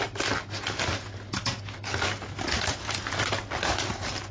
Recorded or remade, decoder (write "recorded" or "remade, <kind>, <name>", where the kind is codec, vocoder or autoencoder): recorded